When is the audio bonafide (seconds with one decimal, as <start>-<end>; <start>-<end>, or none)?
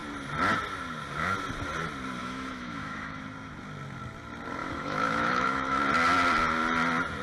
0.0-2.2; 3.2-4.6; 5.8-7.2